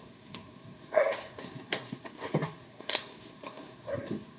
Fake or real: fake